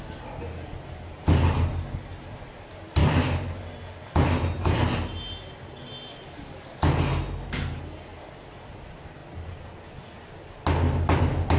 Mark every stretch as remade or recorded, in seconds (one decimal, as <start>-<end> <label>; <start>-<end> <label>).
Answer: 0.0-8.1 recorded; 8.1-8.7 remade; 8.7-11.6 recorded